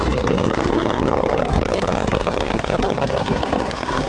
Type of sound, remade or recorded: remade